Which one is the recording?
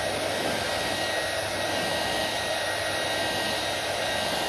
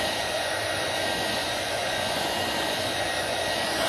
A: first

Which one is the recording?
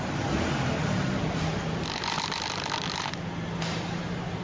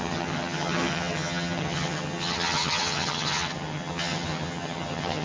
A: first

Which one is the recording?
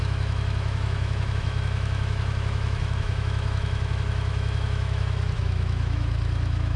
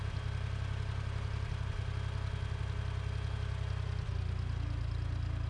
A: second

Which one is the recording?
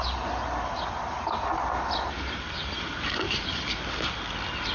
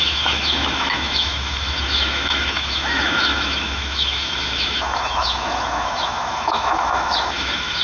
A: first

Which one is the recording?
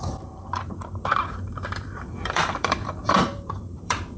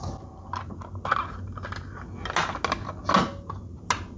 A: second